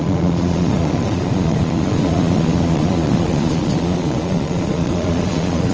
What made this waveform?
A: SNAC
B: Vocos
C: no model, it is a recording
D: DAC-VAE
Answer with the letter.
B